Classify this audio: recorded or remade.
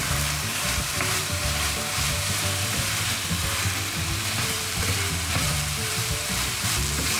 remade